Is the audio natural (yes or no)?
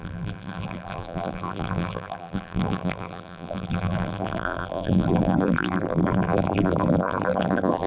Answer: no